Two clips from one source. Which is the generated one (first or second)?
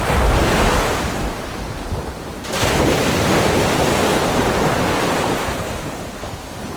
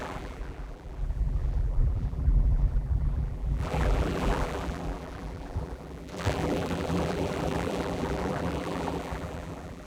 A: second